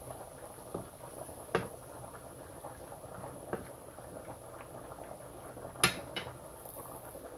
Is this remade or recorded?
recorded